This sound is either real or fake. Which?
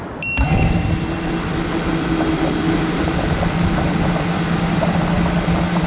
real